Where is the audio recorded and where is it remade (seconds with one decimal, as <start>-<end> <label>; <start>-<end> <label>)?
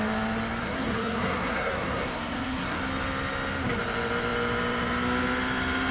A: 0.0-0.6 recorded; 0.6-2.8 remade; 2.8-5.9 recorded